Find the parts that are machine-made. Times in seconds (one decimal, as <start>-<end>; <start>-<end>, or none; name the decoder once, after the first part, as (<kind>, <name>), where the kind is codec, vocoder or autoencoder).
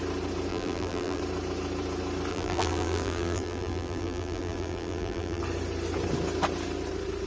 0.5-1.2 (vocoder, BigVGAN v2); 2.3-5.4